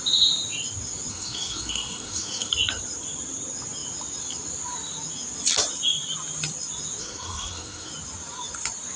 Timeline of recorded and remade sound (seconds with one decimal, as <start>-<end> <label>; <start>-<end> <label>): 0.0-1.1 recorded; 1.1-2.5 remade; 2.5-7.0 recorded; 7.0-7.9 remade; 7.9-9.0 recorded

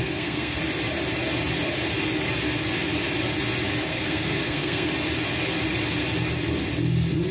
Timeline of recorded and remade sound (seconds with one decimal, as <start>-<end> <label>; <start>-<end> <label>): 0.0-0.6 remade; 0.6-3.9 recorded; 3.9-4.9 remade; 4.9-7.3 recorded

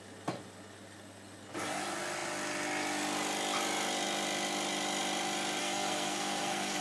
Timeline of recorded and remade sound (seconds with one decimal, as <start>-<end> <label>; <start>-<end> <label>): 0.0-5.6 recorded; 5.6-6.8 remade

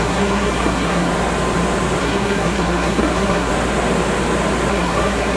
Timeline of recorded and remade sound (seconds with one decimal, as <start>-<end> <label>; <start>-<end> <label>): 0.0-1.1 remade; 1.1-2.0 recorded; 2.0-3.5 remade; 3.5-4.7 recorded; 4.7-5.4 remade